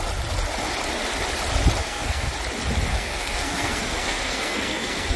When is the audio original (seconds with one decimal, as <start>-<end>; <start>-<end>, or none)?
0.0-1.8; 2.3-2.9